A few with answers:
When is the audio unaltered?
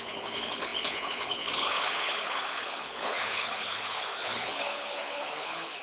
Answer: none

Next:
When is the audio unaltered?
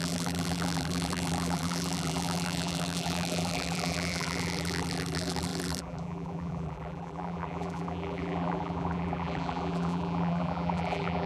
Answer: none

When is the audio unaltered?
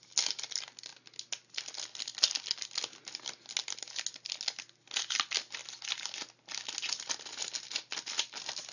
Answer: 0.0-8.7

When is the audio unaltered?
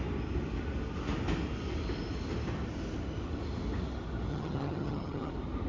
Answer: 0.0-4.3; 5.3-5.7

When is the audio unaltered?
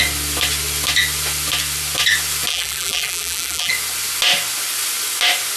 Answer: 0.0-2.5; 3.7-5.6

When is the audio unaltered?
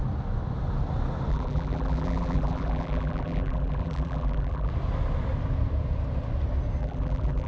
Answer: 0.0-1.3; 4.7-6.8